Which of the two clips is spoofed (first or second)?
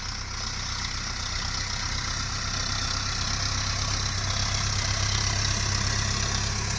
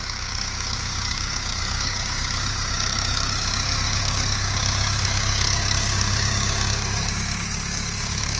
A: second